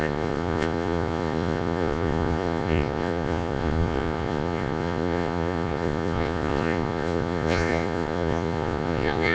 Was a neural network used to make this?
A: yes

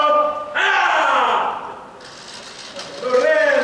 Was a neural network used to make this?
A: no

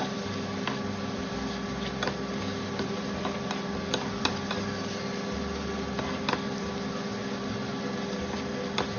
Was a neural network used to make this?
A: no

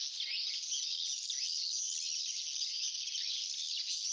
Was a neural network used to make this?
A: no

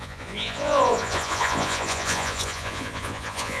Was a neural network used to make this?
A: yes